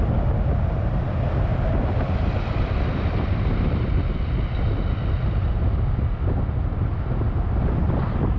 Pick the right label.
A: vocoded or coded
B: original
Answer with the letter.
B